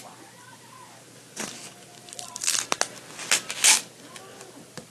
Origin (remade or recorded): recorded